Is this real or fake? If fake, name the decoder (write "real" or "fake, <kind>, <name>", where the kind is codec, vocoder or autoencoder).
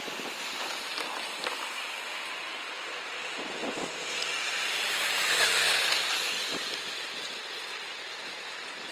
real